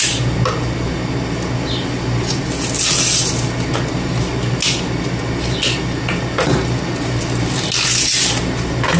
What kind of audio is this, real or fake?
real